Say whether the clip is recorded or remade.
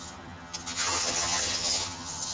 remade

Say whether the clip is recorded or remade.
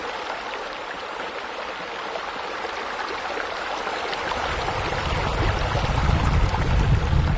recorded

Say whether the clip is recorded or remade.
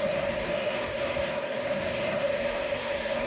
remade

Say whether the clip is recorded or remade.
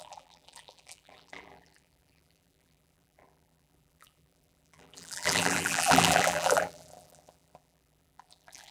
remade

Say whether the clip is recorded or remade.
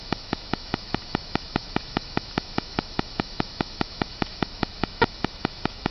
remade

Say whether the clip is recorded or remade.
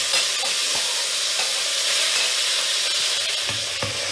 recorded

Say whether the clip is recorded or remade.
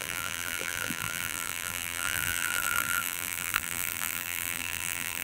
remade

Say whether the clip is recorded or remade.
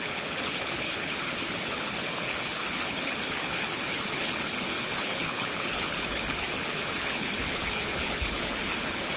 remade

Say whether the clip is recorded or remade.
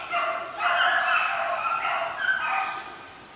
recorded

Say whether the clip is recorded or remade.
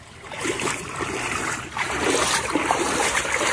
remade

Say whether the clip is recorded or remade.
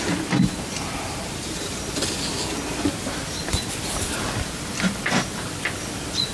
recorded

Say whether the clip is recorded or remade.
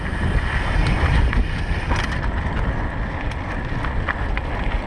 recorded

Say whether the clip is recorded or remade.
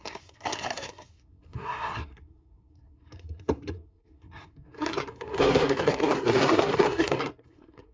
remade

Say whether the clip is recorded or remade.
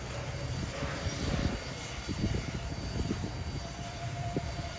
remade